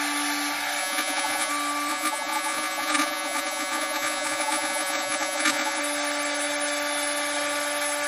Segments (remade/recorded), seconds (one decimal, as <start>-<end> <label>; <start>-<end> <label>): 0.0-0.8 recorded; 0.8-1.5 remade; 1.5-1.9 recorded; 1.9-5.8 remade; 5.8-8.1 recorded